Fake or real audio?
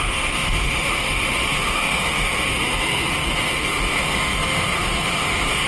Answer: fake